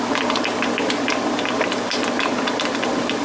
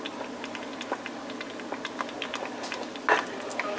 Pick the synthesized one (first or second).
first